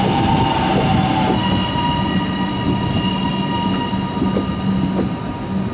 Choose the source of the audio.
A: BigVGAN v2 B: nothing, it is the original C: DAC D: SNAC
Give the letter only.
B